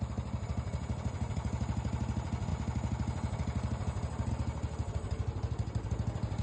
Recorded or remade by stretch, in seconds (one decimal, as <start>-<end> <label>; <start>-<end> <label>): 0.0-6.4 recorded